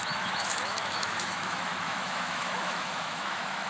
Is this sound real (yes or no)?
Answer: no